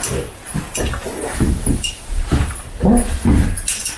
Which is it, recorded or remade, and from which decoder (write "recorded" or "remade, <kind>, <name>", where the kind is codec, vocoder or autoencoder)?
recorded